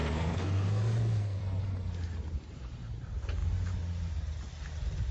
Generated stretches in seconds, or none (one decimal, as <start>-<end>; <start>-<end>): 0.0-1.4